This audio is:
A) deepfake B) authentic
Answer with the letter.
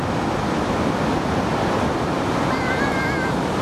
B